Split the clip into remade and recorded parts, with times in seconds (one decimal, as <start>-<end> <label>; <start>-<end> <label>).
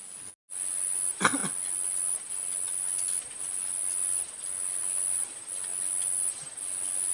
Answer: 0.0-7.1 recorded